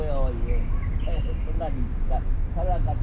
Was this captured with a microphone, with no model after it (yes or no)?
yes